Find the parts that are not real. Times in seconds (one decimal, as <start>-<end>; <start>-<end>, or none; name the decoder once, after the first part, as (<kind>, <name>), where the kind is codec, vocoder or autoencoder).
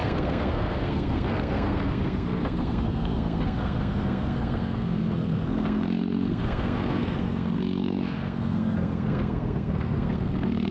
0.0-10.7 (codec, SNAC)